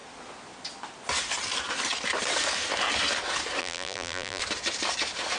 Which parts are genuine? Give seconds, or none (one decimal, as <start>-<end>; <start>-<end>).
0.0-3.6; 4.4-5.4